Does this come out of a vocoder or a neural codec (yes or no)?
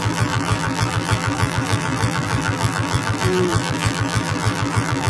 yes